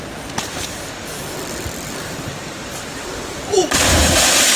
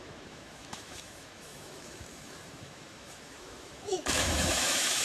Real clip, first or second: first